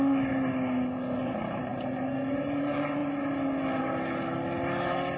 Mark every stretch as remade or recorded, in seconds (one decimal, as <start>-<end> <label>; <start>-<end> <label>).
0.0-5.2 recorded